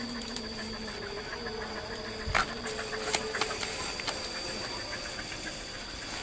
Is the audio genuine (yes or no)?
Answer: yes